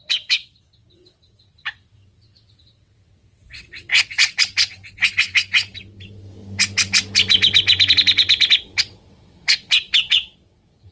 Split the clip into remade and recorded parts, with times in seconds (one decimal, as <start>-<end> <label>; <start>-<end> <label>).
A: 0.0-3.9 remade; 3.9-8.8 recorded; 8.8-10.9 remade